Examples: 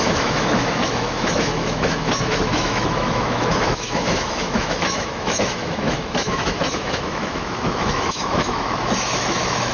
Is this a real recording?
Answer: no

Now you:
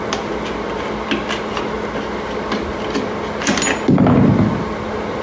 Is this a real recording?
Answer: yes